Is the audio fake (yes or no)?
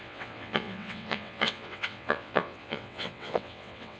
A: yes